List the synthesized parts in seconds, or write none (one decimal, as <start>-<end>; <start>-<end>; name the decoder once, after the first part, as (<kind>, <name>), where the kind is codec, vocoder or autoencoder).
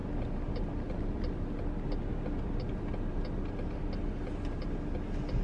none